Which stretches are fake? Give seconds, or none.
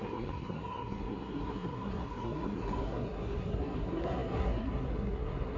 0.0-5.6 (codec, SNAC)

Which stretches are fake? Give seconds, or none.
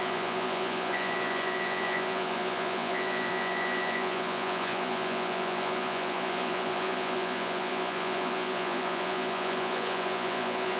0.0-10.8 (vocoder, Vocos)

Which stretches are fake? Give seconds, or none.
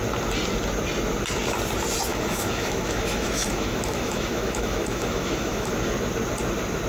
2.1-5.7 (autoencoder, DAC-VAE)